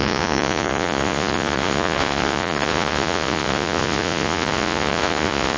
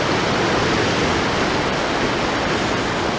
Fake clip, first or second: first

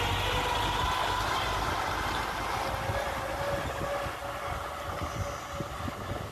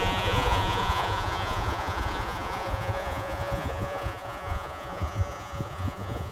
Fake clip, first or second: second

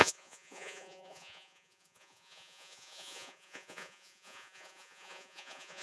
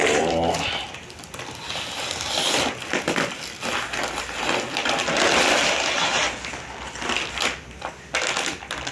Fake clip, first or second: first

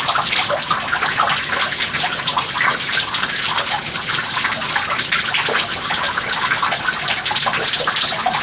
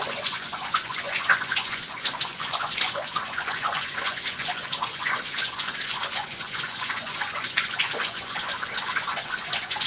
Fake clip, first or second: second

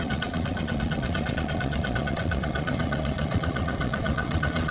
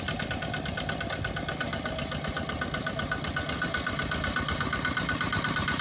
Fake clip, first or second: first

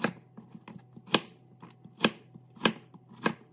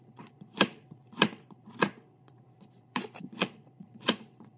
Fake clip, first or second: second